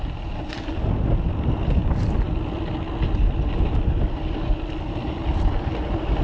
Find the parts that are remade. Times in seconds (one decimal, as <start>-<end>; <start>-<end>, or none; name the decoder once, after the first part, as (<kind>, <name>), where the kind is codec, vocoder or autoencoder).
none